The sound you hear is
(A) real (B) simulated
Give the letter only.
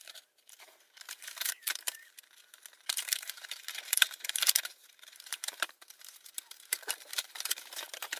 B